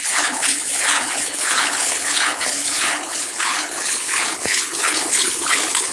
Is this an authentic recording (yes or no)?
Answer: no